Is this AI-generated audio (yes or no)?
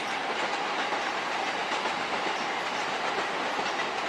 no